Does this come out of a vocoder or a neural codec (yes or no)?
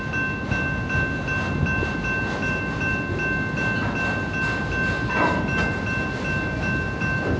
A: no